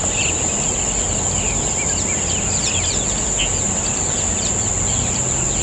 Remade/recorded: recorded